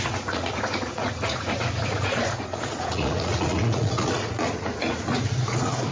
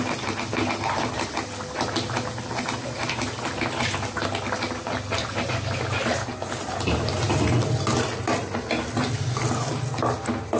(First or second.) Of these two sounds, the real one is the second